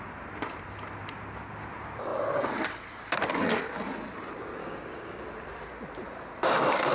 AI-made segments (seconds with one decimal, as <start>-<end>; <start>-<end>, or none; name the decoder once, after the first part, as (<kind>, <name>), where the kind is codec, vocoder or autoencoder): 4.6-5.2 (codec, DAC)